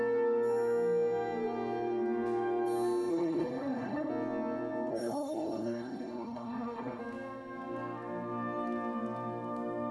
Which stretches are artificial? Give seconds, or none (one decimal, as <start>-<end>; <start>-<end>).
3.1-4.1; 4.9-7.0